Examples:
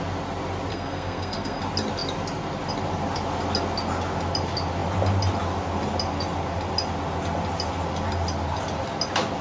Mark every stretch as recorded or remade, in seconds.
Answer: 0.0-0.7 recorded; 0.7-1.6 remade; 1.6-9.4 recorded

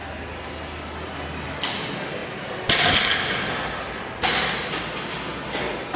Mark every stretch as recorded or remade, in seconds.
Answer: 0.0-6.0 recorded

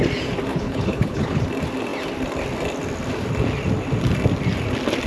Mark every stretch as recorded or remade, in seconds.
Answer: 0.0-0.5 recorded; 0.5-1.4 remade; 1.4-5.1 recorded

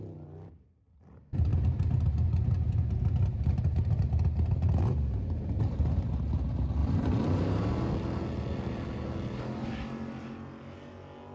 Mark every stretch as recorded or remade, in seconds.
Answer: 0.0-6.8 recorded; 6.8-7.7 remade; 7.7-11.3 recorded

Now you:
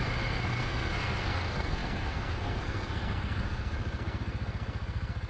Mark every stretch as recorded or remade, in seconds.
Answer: 0.0-5.3 remade

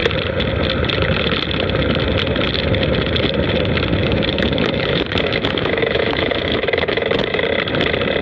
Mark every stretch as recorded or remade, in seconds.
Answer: 0.0-4.0 recorded; 4.0-7.4 remade; 7.4-8.2 recorded

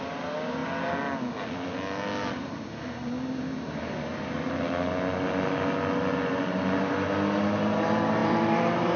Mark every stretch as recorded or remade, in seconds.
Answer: 0.0-0.6 recorded; 0.6-3.8 remade; 3.8-8.2 recorded; 8.2-9.0 remade

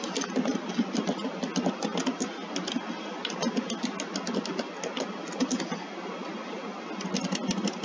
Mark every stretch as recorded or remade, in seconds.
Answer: 0.0-7.8 recorded